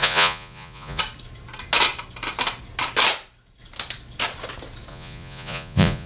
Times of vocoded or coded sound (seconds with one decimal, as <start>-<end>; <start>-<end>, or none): 0.0-1.0; 4.9-6.1